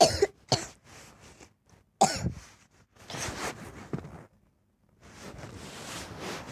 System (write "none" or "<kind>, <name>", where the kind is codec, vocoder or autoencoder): none